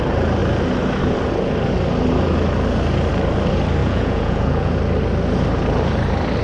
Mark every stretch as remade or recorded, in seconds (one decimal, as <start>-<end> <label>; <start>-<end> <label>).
0.0-3.8 recorded; 3.8-4.7 remade; 4.7-6.4 recorded